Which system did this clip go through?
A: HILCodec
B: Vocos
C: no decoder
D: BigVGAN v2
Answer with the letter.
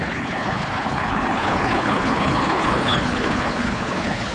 A